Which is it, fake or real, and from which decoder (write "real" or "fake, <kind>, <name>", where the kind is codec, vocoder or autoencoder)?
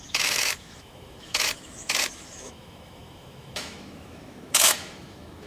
fake, autoencoder, DAC-VAE